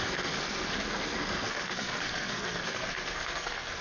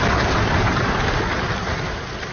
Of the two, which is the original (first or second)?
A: second